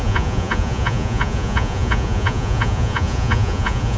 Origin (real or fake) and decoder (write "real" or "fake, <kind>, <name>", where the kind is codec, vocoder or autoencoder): fake, vocoder, Vocos